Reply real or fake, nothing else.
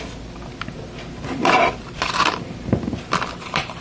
real